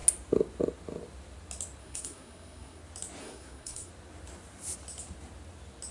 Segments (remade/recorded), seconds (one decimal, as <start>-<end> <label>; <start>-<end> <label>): 0.0-1.8 recorded; 1.8-2.8 remade; 2.8-3.2 recorded; 3.2-3.9 remade; 3.9-5.9 recorded